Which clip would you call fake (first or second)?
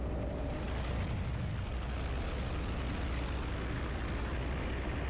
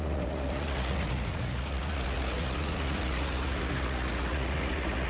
second